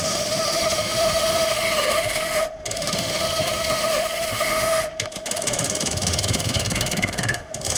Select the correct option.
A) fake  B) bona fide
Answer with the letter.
A